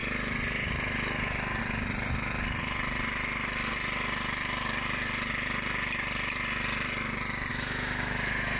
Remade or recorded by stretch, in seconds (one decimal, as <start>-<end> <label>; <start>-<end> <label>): 0.0-7.5 recorded; 7.5-8.6 remade